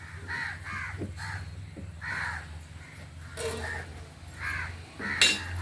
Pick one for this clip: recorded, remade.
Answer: recorded